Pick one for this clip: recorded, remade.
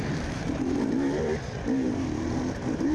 remade